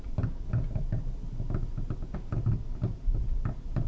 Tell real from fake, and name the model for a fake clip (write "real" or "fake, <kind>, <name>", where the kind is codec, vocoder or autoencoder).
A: real